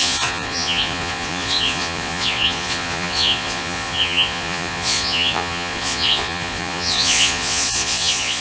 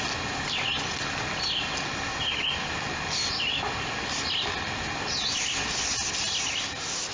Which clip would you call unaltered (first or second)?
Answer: second